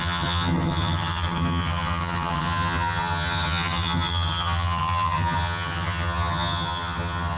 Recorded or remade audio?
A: remade